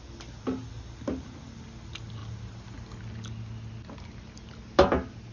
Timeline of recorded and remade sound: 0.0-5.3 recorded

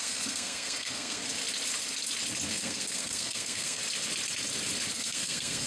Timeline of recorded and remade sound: 0.0-1.2 remade; 1.2-2.5 recorded; 2.5-3.8 remade; 3.8-4.9 recorded; 4.9-5.7 remade

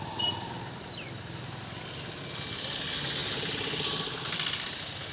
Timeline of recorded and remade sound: 0.0-5.1 recorded

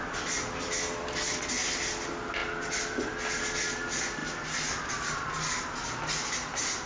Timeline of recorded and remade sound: 0.0-6.9 recorded